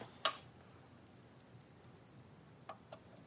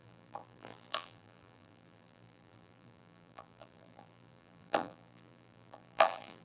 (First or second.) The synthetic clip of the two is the second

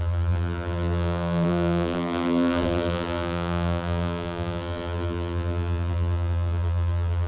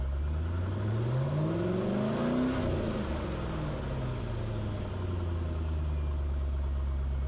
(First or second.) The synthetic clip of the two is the first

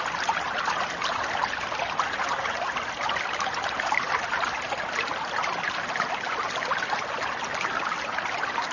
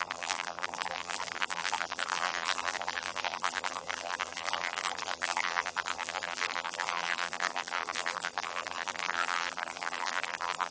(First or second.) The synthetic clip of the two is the second